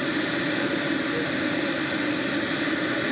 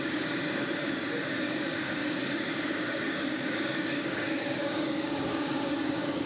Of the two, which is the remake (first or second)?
second